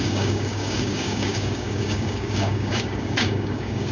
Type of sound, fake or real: fake